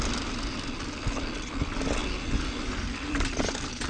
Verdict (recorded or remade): recorded